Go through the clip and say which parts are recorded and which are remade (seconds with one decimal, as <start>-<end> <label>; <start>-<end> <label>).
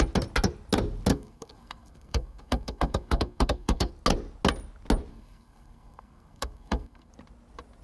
0.0-1.1 recorded; 1.1-3.9 remade; 3.9-5.1 recorded; 5.1-7.1 remade; 7.1-7.8 recorded